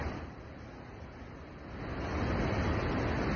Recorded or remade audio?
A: recorded